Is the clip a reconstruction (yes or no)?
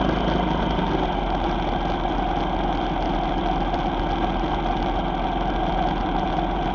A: no